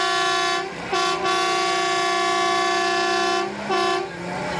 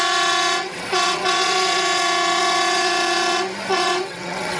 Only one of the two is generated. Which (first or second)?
second